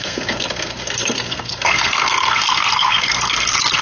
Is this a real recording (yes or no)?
no